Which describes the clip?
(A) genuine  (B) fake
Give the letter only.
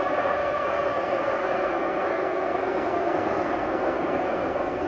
B